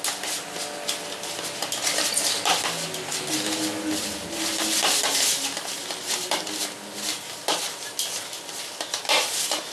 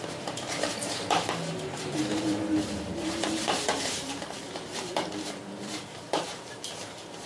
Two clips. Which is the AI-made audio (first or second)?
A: second